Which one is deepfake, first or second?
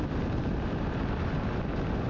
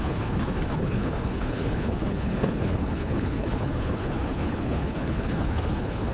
second